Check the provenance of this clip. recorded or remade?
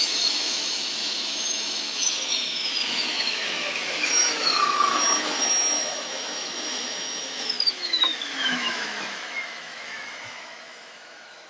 remade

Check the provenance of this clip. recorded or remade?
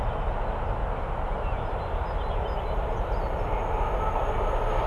recorded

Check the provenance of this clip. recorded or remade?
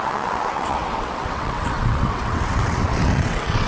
remade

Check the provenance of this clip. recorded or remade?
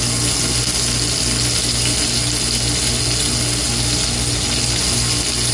recorded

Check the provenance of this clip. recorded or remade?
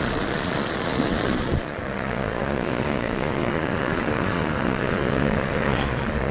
remade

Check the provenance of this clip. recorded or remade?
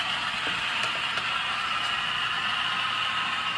recorded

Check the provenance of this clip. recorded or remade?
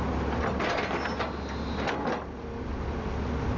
recorded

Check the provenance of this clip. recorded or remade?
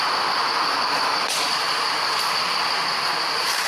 recorded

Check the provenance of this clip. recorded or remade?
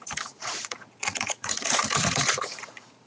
remade